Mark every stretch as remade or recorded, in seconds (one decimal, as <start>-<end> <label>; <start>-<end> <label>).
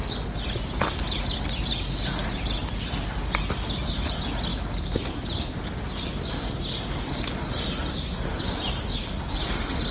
0.0-4.5 recorded; 4.5-6.3 remade; 6.3-7.8 recorded; 7.8-9.1 remade; 9.1-9.9 recorded